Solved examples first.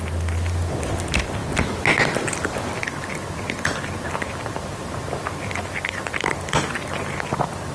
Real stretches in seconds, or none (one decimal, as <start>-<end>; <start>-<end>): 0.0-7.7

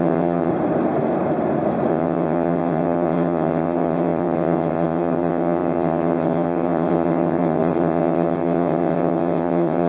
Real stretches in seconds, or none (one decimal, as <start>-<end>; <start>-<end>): 0.5-1.9

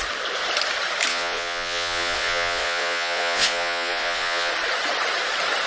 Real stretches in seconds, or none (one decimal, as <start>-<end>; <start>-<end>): 0.0-1.1; 4.5-5.7